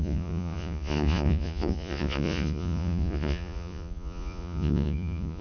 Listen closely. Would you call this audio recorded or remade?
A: remade